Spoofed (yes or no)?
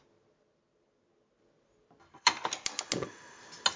no